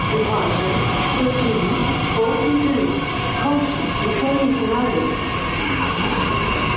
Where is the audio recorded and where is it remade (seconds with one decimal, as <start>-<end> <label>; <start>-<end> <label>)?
0.0-5.6 recorded; 5.6-6.3 remade; 6.3-6.8 recorded